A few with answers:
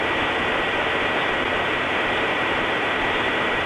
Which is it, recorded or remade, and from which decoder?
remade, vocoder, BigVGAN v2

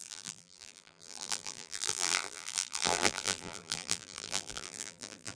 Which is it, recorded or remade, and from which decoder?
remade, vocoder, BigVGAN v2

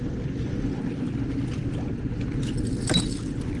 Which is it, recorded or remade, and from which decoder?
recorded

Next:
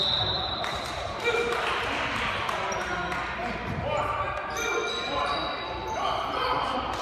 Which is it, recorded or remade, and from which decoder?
remade, vocoder, BigVGAN v2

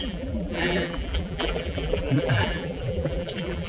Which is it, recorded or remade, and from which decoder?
remade, vocoder, BigVGAN v2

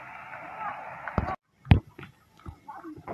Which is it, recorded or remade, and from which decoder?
recorded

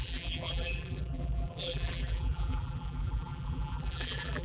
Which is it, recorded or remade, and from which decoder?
remade, vocoder, BigVGAN v2